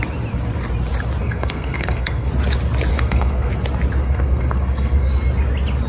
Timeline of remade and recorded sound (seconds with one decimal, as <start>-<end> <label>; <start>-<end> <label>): 0.0-1.2 recorded; 1.2-2.3 remade; 2.3-2.9 recorded; 2.9-3.5 remade; 3.5-4.0 recorded; 4.0-5.1 remade; 5.1-5.9 recorded